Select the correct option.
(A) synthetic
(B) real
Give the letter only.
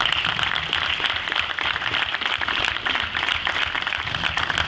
B